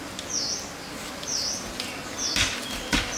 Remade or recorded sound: recorded